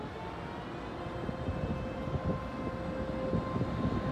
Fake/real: real